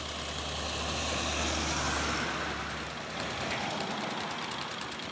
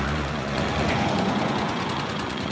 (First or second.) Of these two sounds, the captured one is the first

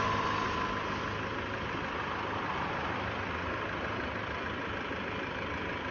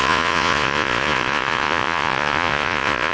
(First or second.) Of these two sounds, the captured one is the first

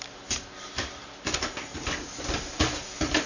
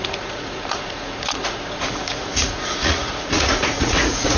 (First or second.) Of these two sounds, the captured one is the first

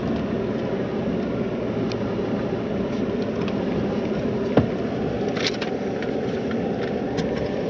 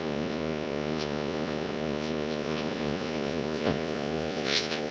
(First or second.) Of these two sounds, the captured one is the first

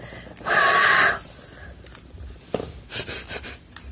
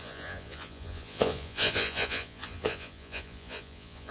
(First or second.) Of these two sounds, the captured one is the first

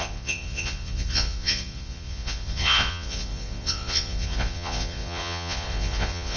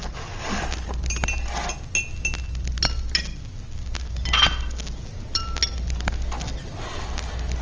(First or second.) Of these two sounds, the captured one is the second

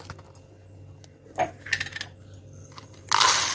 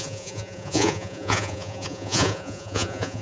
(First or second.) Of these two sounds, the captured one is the first